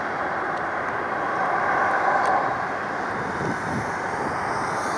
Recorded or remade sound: recorded